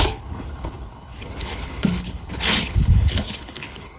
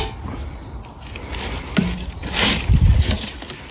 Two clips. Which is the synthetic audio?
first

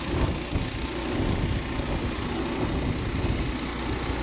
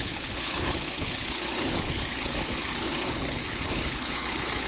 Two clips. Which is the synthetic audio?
second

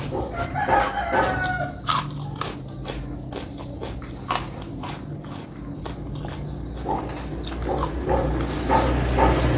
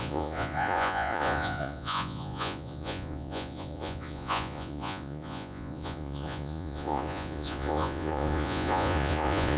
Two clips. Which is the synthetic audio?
second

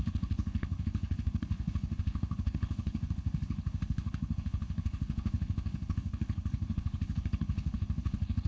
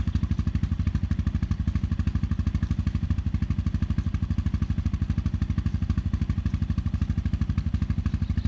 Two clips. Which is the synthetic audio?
first